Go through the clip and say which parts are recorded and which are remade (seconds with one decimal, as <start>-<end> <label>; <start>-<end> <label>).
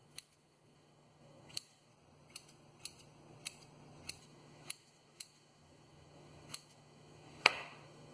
0.0-1.9 remade; 1.9-4.2 recorded; 4.2-8.1 remade